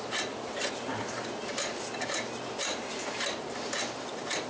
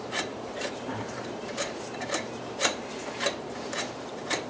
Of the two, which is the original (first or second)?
first